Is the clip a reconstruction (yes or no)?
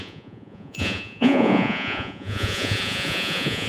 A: yes